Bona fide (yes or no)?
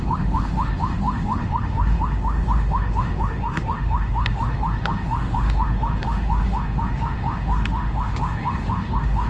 no